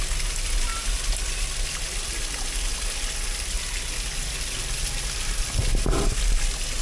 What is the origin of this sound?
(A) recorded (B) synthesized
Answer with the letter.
A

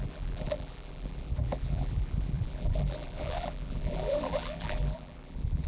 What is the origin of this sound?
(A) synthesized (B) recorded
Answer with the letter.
A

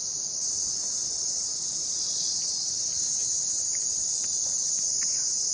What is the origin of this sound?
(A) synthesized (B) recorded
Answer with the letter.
B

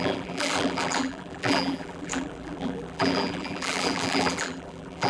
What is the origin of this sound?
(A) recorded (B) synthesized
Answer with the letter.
B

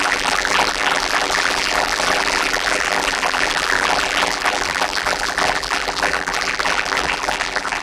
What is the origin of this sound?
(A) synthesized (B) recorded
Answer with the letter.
A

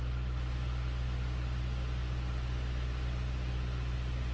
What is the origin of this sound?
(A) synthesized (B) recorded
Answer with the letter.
B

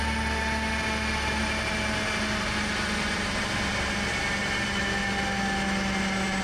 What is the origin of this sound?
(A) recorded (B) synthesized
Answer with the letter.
A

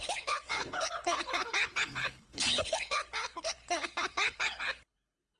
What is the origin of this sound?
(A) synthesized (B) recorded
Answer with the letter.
A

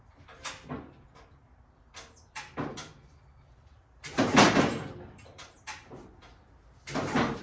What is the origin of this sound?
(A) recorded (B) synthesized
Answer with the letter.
A